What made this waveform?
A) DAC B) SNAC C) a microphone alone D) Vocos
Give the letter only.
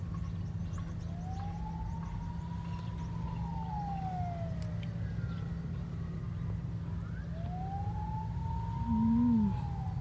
C